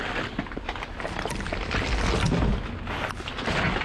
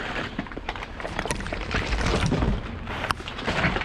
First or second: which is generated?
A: second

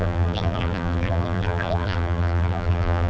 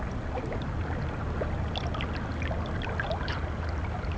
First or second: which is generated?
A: first